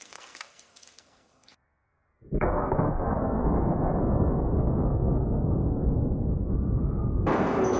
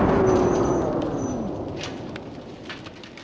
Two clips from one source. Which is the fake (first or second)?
first